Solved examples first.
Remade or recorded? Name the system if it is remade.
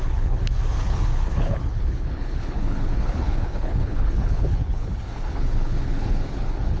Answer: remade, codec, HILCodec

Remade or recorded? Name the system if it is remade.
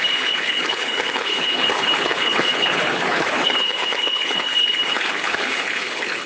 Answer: remade, codec, HILCodec